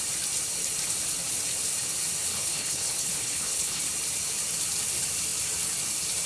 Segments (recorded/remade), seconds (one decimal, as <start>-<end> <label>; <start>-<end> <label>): 0.0-2.3 recorded; 2.3-3.8 remade; 3.8-6.3 recorded